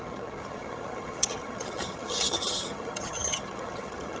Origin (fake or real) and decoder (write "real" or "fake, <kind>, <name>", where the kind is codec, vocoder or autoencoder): fake, vocoder, HiFi-GAN